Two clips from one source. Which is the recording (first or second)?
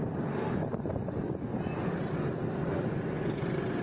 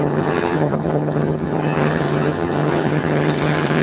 first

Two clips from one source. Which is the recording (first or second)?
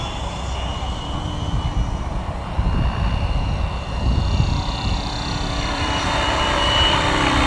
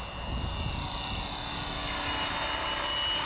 second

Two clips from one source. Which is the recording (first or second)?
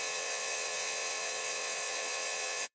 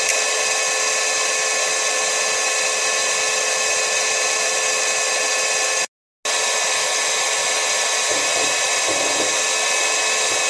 second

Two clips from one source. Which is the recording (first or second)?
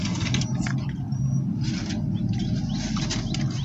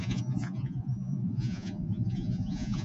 first